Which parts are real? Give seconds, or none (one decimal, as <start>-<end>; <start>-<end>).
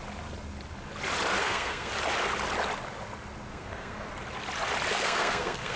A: 0.0-1.4; 1.9-3.5; 4.1-4.9